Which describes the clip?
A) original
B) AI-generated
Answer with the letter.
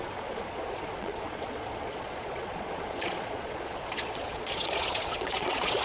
B